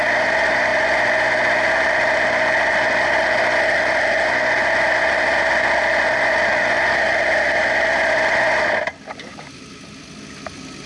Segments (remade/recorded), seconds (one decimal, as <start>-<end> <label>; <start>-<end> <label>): 0.0-10.9 recorded